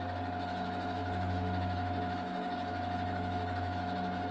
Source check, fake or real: fake